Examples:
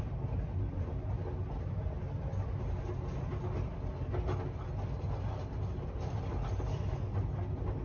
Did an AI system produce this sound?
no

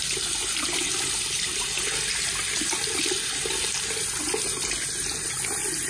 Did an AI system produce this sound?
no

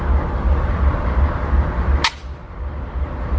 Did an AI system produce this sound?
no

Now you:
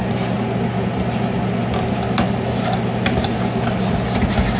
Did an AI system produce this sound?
no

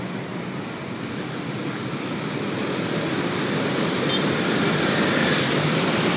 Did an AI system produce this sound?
yes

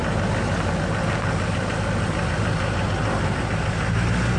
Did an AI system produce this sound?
no